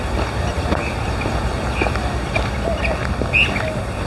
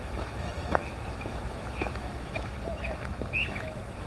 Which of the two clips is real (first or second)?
first